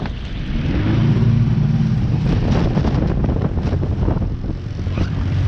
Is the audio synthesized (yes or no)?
yes